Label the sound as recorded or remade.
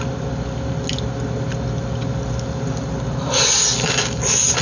recorded